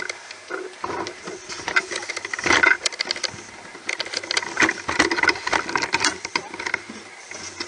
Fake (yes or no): no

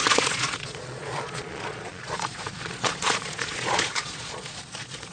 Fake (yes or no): yes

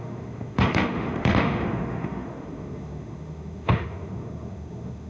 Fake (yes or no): yes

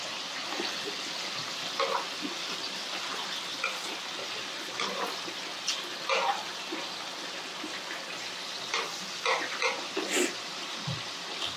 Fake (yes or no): no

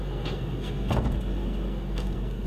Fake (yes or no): yes